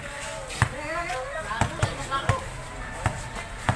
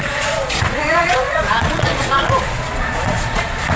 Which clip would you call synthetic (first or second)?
second